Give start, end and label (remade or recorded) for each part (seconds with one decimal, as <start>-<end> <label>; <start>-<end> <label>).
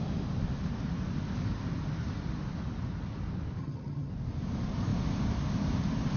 0.0-3.6 recorded; 3.6-4.1 remade; 4.1-6.2 recorded